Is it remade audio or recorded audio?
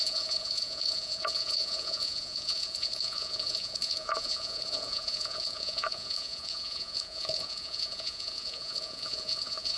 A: remade